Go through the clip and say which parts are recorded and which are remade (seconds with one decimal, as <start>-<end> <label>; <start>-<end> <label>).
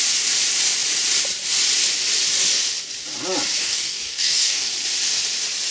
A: 0.0-3.6 recorded; 3.6-4.7 remade; 4.7-5.7 recorded